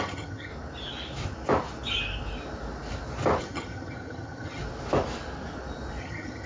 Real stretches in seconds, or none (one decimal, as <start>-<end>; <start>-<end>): 0.5-3.4; 4.6-6.0